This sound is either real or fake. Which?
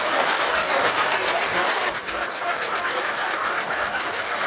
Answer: fake